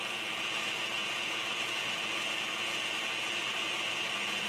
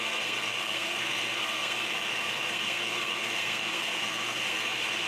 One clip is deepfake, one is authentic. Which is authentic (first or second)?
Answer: first